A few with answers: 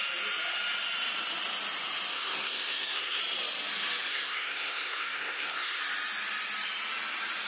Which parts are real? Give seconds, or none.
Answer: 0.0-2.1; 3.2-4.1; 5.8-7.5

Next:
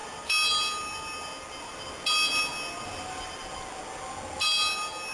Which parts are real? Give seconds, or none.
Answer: 0.0-5.1

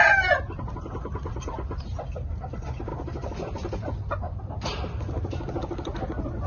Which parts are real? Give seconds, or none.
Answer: 0.0-6.5